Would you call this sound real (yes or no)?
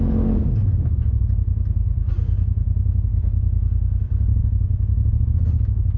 yes